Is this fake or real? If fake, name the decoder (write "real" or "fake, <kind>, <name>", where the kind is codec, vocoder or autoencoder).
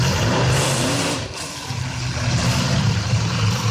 fake, vocoder, BigVGAN v2